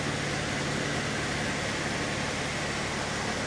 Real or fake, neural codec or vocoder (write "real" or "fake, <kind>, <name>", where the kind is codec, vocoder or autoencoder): real